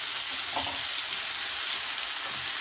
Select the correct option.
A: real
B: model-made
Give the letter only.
A